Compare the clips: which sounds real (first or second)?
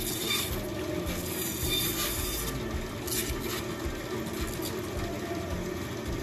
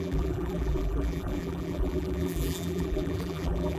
first